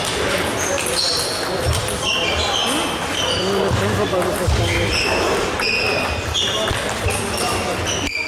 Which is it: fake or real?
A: real